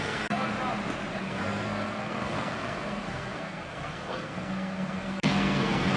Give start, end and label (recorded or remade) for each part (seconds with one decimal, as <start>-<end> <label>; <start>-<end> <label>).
0.0-0.5 remade; 0.5-1.2 recorded; 1.2-6.0 remade